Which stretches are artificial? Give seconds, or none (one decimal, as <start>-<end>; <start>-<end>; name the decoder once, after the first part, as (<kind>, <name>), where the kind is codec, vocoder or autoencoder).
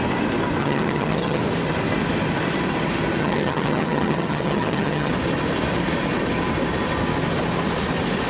0.6-1.4 (vocoder, HiFi-GAN); 3.2-5.1